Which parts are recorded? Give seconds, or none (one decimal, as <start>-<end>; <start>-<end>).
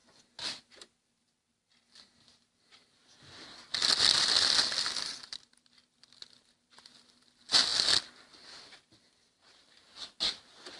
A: 0.0-5.2; 6.0-10.8